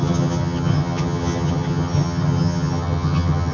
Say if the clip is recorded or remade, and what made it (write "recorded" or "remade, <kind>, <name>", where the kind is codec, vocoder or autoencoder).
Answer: remade, vocoder, HiFi-GAN